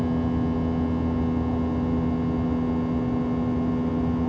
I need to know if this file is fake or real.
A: real